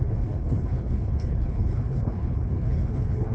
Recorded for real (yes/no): no